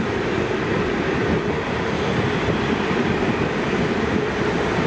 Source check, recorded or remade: remade